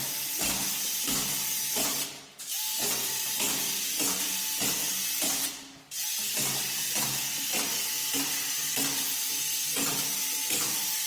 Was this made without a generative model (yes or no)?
yes